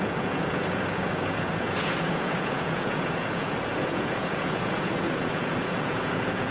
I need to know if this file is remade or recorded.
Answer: remade